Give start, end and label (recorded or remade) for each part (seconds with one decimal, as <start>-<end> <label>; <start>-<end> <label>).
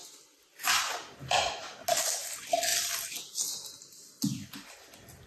0.0-5.3 recorded